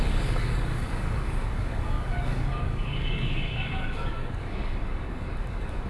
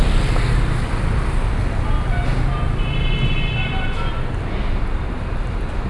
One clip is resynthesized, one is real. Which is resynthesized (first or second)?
first